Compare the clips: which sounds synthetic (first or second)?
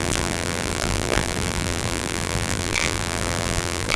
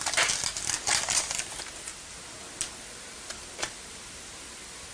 first